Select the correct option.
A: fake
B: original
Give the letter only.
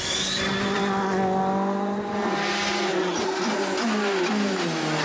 B